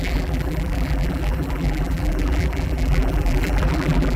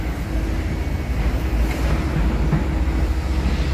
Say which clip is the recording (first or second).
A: second